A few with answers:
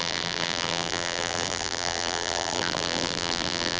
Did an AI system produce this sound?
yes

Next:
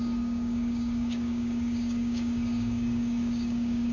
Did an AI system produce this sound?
yes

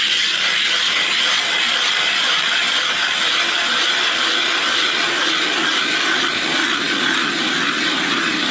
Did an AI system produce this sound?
no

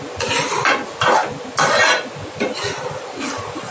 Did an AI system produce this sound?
no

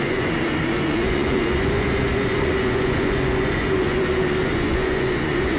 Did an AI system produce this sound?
yes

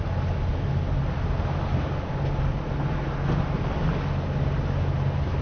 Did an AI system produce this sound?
no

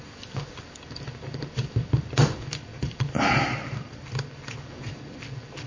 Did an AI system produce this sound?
yes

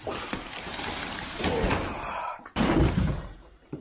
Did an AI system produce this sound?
yes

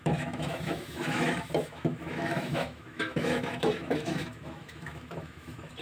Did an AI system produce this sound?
yes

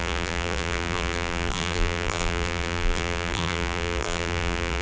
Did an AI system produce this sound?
yes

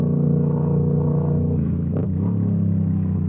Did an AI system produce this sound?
yes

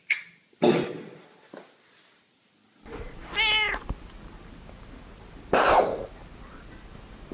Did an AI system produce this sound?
no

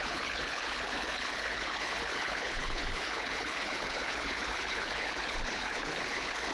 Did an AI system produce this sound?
yes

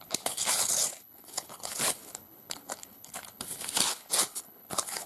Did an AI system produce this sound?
yes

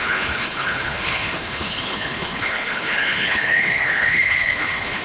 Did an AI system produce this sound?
yes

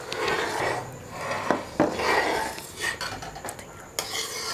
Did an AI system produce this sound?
no